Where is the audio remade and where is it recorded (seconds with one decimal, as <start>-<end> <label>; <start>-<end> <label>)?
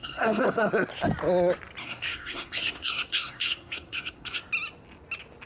0.0-0.7 remade; 0.7-1.8 recorded; 1.8-4.4 remade; 4.4-5.5 recorded